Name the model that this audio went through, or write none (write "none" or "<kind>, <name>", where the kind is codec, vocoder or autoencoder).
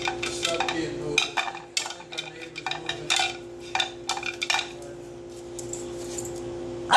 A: none